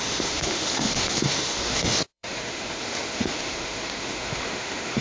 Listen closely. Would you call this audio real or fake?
fake